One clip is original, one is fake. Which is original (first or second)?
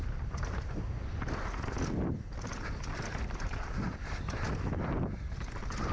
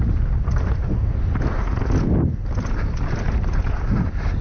second